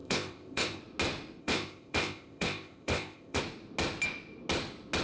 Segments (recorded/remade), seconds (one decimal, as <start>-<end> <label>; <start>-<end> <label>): 0.0-0.8 remade; 0.8-1.4 recorded; 1.4-3.4 remade; 3.4-5.0 recorded